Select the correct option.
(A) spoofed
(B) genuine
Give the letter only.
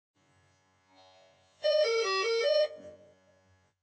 A